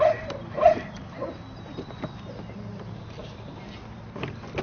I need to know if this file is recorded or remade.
recorded